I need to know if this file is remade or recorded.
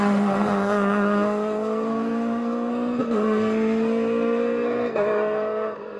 remade